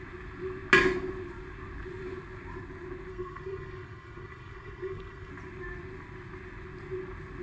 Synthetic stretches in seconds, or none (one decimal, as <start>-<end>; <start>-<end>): 3.1-5.3